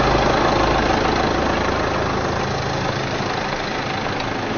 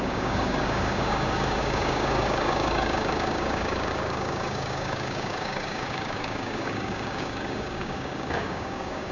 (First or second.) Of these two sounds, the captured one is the first